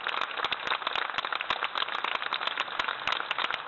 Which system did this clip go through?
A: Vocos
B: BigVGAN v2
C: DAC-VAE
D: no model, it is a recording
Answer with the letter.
D